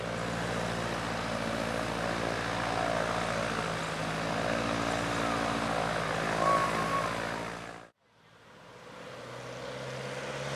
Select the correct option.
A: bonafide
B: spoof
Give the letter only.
A